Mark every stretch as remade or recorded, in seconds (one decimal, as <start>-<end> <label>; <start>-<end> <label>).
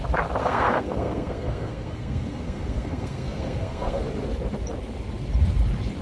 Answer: 0.0-0.4 recorded; 0.4-4.0 remade; 4.0-6.0 recorded